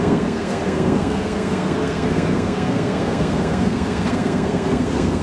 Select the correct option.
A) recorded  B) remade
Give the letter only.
B